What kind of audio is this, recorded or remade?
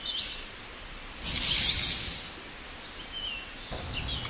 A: recorded